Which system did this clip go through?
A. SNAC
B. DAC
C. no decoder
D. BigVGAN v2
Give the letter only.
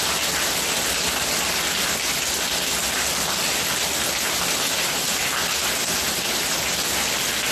C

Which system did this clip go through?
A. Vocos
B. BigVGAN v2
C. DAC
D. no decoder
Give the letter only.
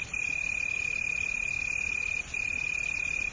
D